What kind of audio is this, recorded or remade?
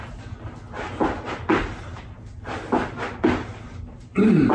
recorded